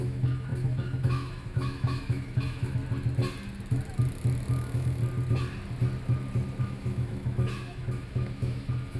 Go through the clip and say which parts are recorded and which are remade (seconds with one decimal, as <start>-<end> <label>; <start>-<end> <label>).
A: 0.0-2.8 remade; 2.8-4.5 recorded; 4.5-5.0 remade; 5.0-6.6 recorded; 6.6-9.0 remade